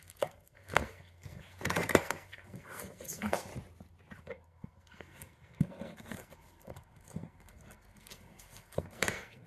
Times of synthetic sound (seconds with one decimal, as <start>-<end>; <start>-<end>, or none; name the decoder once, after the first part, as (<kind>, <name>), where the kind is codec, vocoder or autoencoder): 0.0-3.5 (codec, SNAC); 4.2-9.5

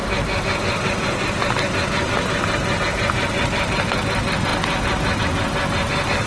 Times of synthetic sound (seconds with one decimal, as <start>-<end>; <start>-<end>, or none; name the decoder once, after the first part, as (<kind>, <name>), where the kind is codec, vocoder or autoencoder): none

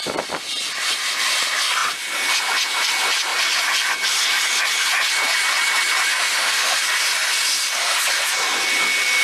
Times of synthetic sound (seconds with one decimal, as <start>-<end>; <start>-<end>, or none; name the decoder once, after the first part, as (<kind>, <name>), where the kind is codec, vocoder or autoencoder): 6.1-6.8 (autoencoder, DAC-VAE)

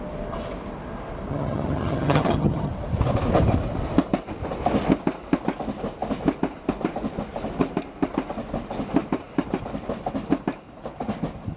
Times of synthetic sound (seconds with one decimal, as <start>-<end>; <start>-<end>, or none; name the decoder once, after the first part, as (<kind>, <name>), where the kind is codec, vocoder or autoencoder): 1.3-2.7 (vocoder, HiFi-GAN)

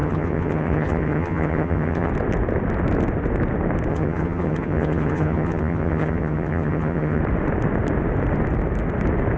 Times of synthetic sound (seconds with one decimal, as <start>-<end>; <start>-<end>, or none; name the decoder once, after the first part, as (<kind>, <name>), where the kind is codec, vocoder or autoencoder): 0.0-2.1 (vocoder, HiFi-GAN); 3.9-7.2

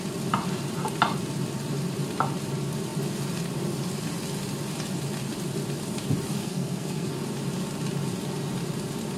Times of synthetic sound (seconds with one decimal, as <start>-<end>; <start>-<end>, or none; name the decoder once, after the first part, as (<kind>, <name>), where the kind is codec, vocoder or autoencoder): 6.4-7.1 (codec, SNAC)